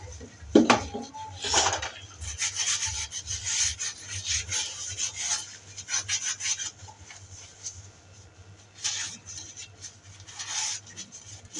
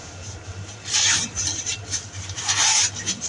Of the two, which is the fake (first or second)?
second